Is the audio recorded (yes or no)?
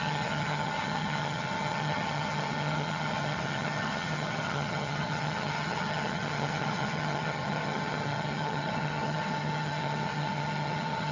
no